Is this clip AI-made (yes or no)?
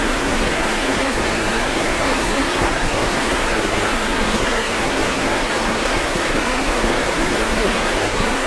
yes